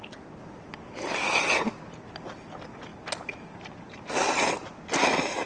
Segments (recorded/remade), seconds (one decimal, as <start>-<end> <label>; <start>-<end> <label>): 0.0-5.5 recorded